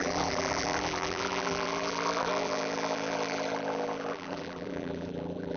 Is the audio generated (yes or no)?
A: yes